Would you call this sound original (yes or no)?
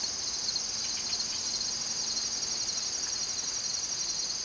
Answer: yes